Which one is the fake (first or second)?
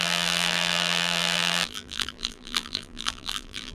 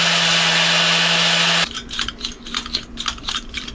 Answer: first